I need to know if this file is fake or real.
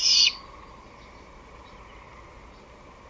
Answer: real